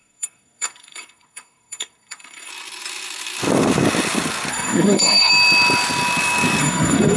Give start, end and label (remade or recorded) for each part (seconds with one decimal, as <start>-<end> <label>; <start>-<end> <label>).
0.0-2.5 remade; 2.5-4.5 recorded; 4.5-5.3 remade; 5.3-6.6 recorded; 6.6-7.2 remade